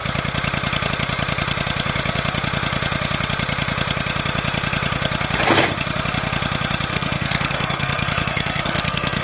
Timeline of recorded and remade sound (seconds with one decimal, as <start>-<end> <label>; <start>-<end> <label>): 0.0-6.9 recorded; 6.9-9.2 remade